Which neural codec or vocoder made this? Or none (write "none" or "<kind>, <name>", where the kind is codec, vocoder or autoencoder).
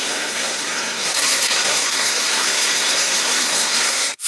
codec, SNAC